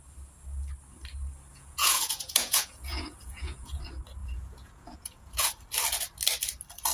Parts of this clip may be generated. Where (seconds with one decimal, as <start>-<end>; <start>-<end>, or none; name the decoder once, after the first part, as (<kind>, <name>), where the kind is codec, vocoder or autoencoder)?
1.5-3.8 (vocoder, Vocos); 4.2-5.5